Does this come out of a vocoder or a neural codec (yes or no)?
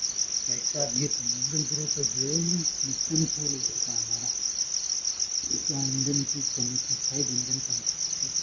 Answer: no